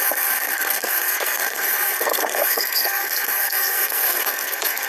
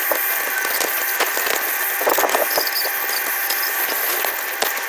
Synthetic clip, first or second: first